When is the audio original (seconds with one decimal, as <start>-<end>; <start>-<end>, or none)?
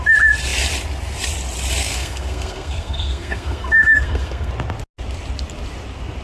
0.0-1.8; 4.5-6.2